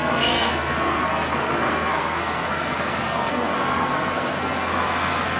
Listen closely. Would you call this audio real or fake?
fake